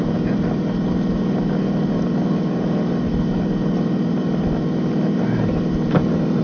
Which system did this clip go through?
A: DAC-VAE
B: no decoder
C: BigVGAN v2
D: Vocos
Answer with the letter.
C